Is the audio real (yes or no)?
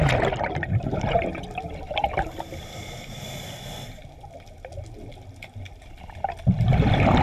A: yes